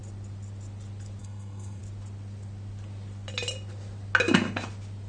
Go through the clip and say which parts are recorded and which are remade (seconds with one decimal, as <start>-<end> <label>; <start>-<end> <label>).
0.0-1.2 recorded; 1.2-1.8 remade; 1.8-5.1 recorded